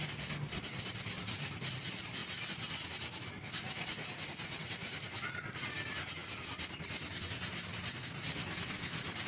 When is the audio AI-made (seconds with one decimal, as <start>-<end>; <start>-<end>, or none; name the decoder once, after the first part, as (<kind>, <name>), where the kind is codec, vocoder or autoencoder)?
none